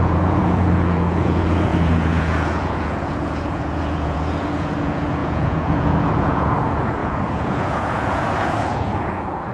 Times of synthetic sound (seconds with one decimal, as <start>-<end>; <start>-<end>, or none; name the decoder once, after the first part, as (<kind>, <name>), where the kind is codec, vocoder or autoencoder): 0.0-9.5 (vocoder, Vocos)